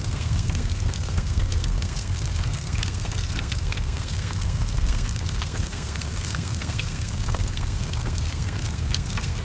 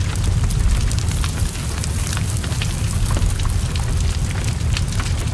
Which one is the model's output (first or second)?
first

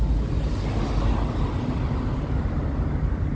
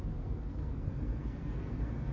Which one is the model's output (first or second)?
second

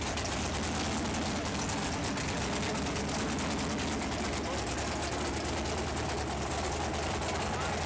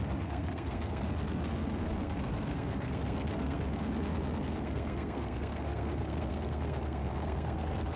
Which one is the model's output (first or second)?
second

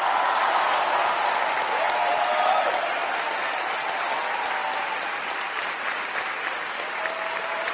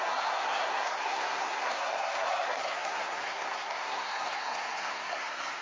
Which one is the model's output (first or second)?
second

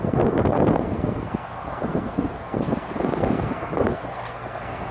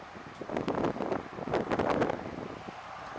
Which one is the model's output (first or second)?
first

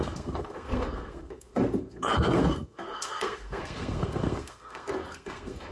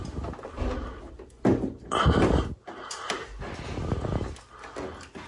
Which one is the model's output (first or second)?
first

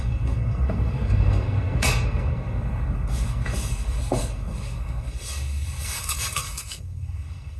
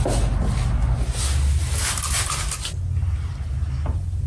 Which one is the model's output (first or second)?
first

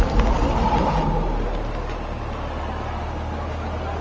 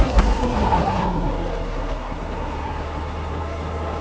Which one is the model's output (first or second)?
second